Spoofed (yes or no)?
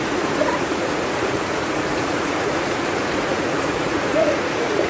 yes